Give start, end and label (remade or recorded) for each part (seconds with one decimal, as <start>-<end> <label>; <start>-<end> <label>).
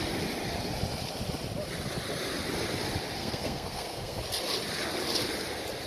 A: 0.0-3.2 recorded; 3.2-4.2 remade; 4.2-5.9 recorded